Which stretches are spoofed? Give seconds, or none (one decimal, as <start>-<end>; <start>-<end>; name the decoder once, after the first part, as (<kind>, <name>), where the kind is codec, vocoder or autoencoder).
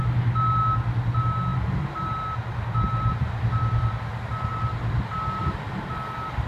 none